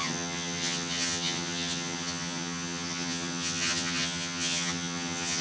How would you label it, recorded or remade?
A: remade